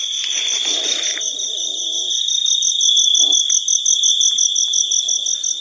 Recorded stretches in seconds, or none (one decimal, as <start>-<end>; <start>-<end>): 0.0-5.6